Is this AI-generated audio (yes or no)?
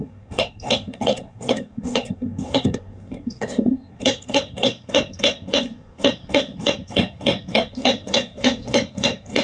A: yes